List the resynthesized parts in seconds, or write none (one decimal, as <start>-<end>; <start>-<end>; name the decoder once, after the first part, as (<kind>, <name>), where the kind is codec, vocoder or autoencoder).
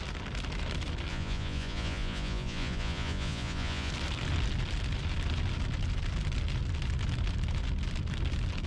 1.1-3.9 (vocoder, Vocos)